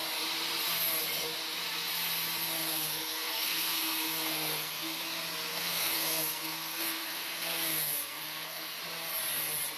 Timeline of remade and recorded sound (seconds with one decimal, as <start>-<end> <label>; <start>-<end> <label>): 0.0-2.6 recorded; 2.6-5.0 remade; 5.0-5.5 recorded; 5.5-8.8 remade; 8.8-9.8 recorded